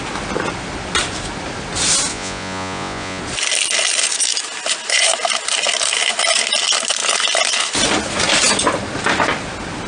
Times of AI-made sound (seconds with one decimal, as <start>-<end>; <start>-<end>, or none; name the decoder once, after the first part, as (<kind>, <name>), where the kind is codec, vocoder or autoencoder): 2.1-3.2 (vocoder, Vocos)